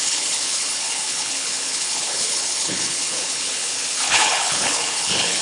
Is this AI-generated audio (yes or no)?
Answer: yes